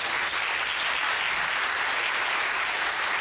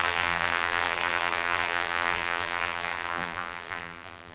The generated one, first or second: second